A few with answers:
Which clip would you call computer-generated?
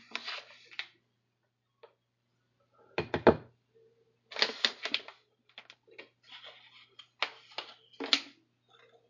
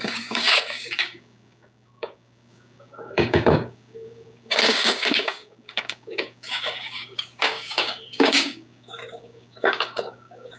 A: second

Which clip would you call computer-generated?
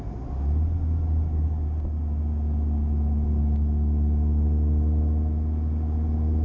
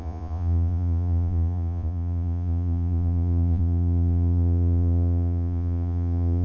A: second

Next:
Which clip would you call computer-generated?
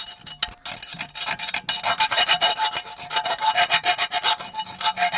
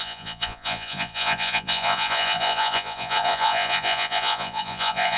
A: second